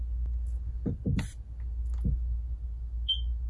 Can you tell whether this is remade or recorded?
recorded